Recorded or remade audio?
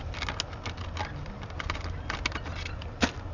recorded